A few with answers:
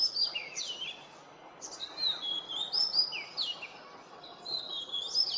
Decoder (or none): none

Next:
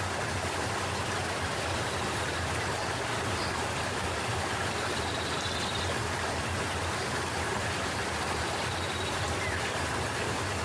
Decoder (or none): none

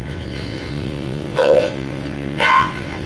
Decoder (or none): vocoder, WaveNeXt